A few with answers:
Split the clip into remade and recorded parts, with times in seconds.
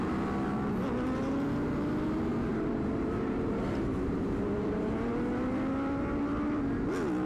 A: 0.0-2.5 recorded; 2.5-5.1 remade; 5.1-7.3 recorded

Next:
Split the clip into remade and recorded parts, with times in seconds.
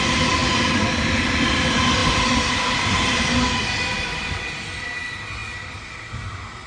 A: 0.0-6.7 recorded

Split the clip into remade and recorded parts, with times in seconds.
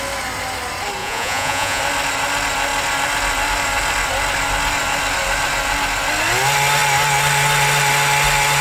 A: 0.0-1.0 recorded; 1.0-1.8 remade; 1.8-8.6 recorded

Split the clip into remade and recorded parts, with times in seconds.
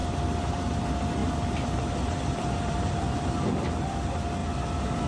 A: 0.0-1.2 recorded; 1.2-3.7 remade; 3.7-4.4 recorded; 4.4-5.1 remade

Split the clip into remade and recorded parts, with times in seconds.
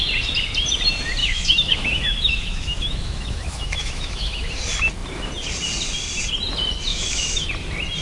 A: 0.0-1.2 recorded; 1.2-4.5 remade; 4.5-6.9 recorded; 6.9-7.5 remade; 7.5-8.0 recorded